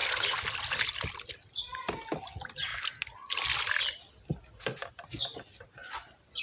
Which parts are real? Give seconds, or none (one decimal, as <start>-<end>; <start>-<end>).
0.0-6.4